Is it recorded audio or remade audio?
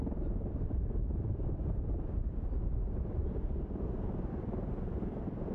recorded